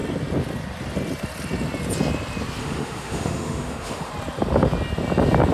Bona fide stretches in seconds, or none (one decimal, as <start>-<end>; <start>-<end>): 0.0-2.6; 4.1-5.5